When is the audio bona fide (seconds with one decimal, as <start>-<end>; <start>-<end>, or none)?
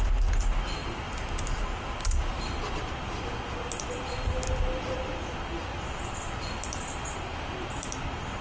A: 0.0-8.4